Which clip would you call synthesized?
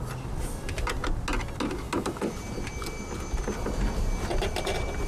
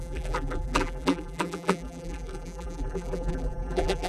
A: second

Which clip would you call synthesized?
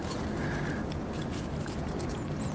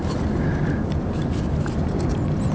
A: second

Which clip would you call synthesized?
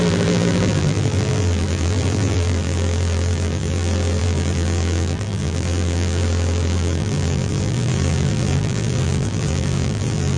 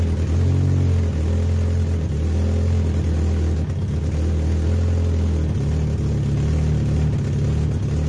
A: first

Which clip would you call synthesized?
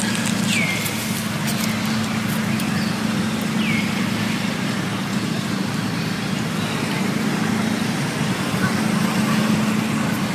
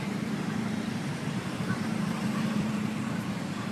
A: second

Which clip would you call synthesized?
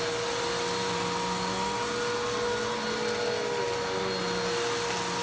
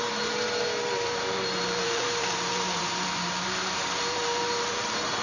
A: second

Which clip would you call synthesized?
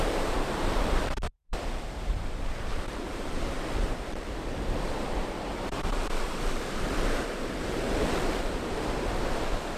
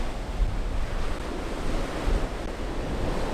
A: first